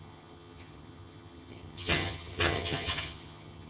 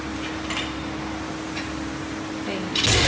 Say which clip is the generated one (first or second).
first